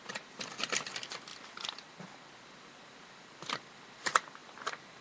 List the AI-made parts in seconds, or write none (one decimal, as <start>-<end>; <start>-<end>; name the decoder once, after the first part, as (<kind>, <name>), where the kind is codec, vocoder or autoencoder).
none